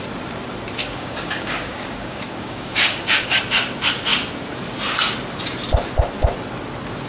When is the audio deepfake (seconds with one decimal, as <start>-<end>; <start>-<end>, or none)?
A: 0.8-3.4